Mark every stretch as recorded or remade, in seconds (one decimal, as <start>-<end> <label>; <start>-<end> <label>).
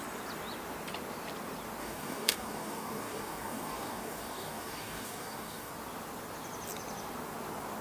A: 0.0-1.8 recorded; 1.8-5.7 remade; 5.7-7.8 recorded